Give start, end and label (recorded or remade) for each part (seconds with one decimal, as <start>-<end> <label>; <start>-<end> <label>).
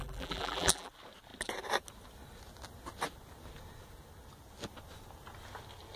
0.0-0.9 remade; 0.9-6.0 recorded